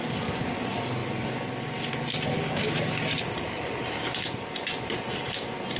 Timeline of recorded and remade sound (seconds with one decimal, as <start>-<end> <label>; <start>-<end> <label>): 0.0-5.8 recorded